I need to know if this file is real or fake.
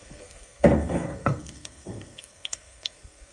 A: fake